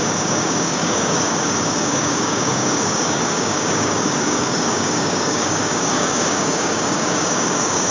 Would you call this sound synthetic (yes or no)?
yes